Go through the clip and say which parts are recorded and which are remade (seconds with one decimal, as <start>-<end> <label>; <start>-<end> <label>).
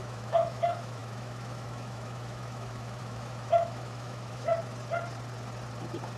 0.0-4.5 remade; 4.5-6.2 recorded